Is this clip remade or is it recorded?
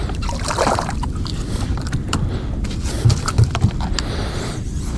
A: remade